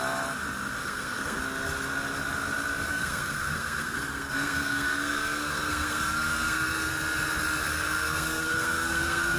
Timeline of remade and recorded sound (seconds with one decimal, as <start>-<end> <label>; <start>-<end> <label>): 0.0-0.8 recorded; 0.8-1.4 remade; 1.4-2.9 recorded; 2.9-6.9 remade; 6.9-7.7 recorded; 7.7-9.4 remade

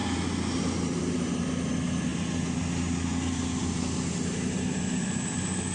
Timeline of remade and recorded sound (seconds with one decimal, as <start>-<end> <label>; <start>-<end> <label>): 0.0-5.7 recorded

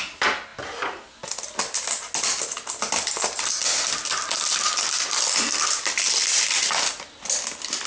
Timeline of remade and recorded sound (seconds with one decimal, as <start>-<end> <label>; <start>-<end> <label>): 0.0-7.9 recorded

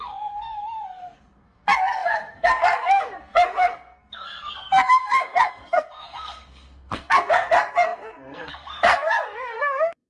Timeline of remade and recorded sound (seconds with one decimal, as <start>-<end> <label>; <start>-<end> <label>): 0.0-10.1 remade

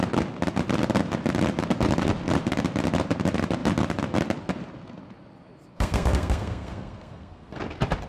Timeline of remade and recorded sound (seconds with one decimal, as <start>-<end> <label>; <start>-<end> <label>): 0.0-5.7 recorded; 5.7-7.6 remade; 7.6-8.1 recorded

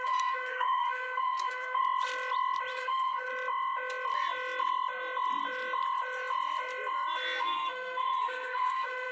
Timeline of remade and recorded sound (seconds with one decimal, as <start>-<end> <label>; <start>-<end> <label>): 0.0-1.8 remade; 1.8-2.7 recorded; 2.7-3.3 remade; 3.3-7.4 recorded; 7.4-9.1 remade

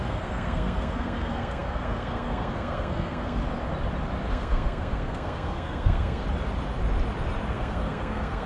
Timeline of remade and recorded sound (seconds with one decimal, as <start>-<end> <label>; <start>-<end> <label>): 0.0-3.4 remade; 3.4-4.3 recorded; 4.3-6.2 remade; 6.2-7.5 recorded; 7.5-8.5 remade